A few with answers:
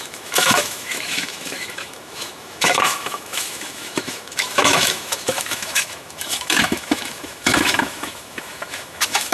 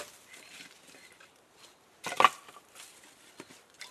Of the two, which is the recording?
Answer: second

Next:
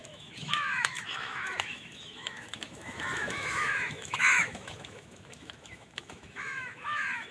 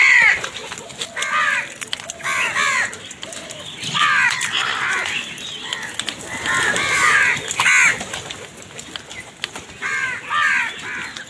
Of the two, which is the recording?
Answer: second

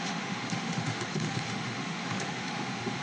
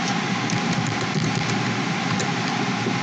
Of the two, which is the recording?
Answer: second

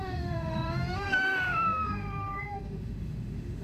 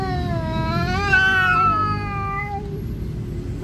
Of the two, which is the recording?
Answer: second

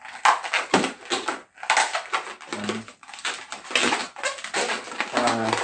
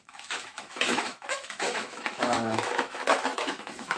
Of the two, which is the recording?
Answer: first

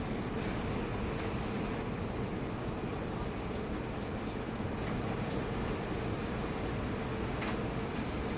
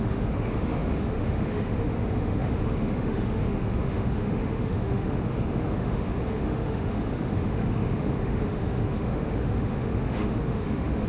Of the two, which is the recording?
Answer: first